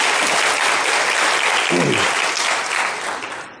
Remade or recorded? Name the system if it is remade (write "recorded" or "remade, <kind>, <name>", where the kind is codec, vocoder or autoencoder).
recorded